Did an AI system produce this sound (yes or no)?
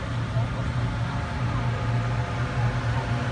no